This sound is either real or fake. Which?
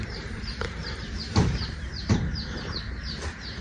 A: fake